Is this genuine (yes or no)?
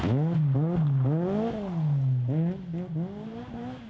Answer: yes